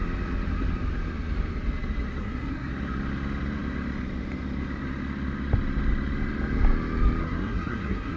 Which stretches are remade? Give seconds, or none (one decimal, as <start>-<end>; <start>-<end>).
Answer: 2.2-2.7; 7.2-8.2